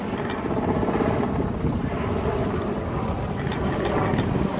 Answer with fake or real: real